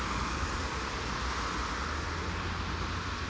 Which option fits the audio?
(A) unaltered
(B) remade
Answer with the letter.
A